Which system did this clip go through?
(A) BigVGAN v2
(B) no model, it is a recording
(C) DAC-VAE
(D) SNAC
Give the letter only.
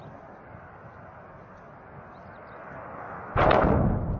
B